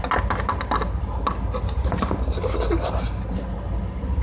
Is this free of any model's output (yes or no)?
yes